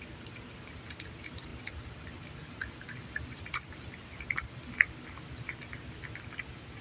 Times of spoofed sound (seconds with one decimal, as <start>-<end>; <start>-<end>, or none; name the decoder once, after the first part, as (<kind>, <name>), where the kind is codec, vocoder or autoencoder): none